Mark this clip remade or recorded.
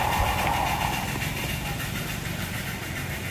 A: recorded